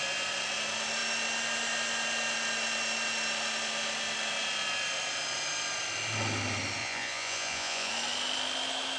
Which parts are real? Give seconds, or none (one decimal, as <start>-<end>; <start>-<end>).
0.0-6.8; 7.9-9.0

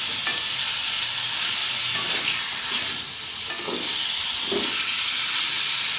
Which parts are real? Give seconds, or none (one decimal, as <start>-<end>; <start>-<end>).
0.0-6.0

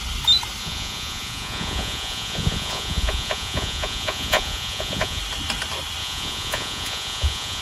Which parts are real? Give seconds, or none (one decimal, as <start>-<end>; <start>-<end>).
0.0-0.6; 5.2-6.0